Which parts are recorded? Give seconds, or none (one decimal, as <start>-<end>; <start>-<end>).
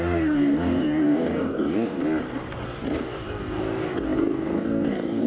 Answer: 2.0-3.0